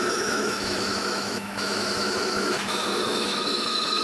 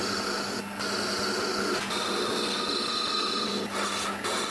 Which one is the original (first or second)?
second